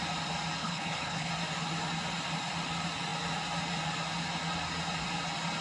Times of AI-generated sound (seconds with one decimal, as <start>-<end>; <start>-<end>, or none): 0.6-1.3